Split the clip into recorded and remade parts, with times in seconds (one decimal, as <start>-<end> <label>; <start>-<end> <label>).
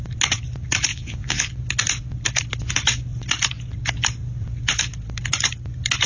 0.0-0.9 recorded; 0.9-1.5 remade; 1.5-6.1 recorded